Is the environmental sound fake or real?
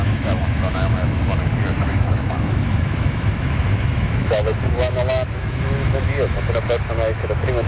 fake